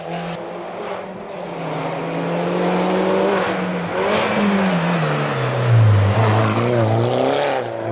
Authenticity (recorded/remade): recorded